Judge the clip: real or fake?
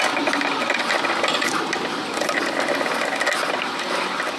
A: real